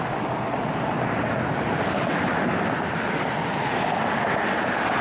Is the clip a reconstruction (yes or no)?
no